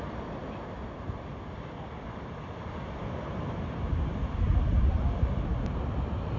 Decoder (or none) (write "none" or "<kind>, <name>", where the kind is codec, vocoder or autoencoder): none